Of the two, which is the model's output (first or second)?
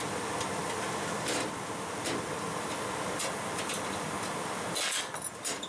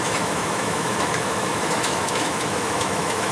second